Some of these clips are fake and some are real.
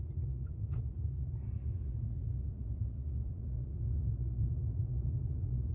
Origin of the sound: fake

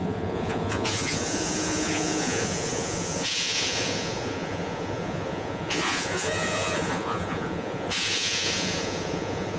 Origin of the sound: fake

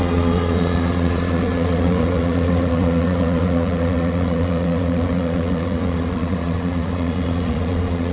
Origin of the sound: fake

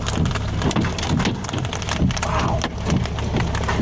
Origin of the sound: real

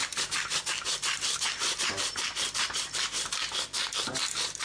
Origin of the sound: real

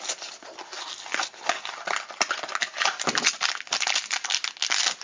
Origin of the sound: real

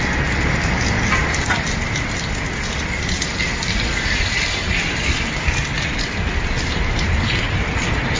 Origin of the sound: real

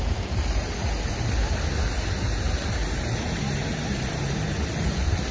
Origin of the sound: real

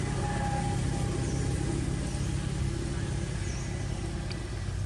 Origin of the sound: real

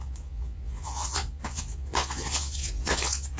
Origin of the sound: fake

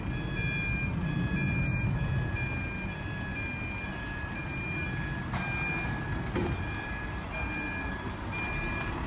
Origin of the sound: real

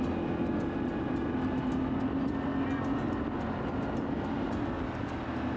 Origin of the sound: real